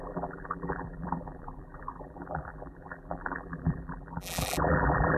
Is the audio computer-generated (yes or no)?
yes